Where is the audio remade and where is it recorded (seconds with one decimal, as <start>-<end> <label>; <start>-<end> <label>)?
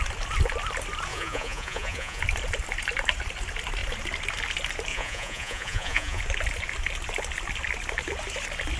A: 0.0-1.1 recorded; 1.1-2.2 remade; 2.2-4.9 recorded; 4.9-6.2 remade; 6.2-8.8 recorded